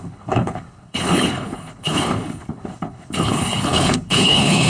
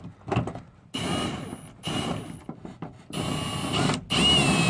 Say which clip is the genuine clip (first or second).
second